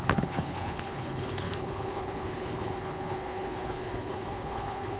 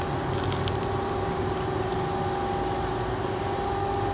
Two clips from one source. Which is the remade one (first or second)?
first